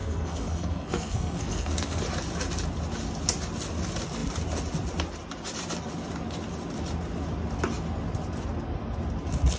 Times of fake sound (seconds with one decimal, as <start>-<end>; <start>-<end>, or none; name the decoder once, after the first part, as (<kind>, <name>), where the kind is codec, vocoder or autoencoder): 0.0-2.0 (codec, SNAC)